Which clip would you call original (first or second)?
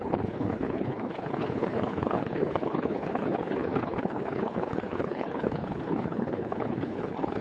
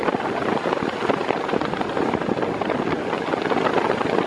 second